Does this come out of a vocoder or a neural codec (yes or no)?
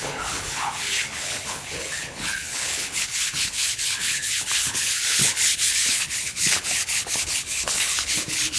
yes